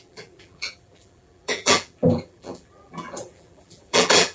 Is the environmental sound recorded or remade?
remade